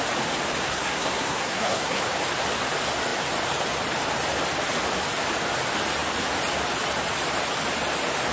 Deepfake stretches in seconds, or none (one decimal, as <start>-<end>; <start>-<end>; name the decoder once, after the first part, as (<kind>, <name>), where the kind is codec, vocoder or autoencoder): 0.6-2.0 (codec, SNAC)